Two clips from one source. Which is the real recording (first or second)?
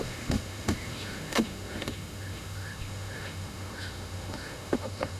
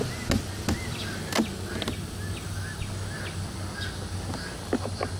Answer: second